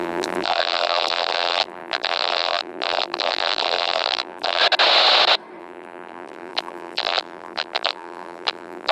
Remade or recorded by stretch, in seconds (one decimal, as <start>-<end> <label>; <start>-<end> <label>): 0.0-4.6 remade; 4.6-5.6 recorded; 5.6-8.9 remade